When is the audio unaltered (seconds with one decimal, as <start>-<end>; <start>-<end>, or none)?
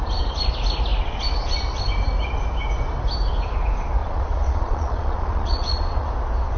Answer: 0.0-4.0; 6.1-6.6